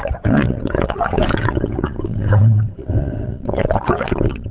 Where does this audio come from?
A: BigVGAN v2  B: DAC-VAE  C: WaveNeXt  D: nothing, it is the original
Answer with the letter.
C